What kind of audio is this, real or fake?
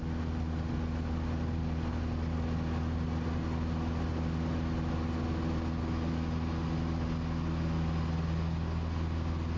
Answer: real